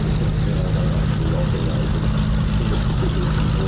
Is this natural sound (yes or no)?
yes